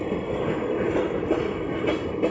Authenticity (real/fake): real